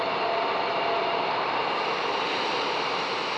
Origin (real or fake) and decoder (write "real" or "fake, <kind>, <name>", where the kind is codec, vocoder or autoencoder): real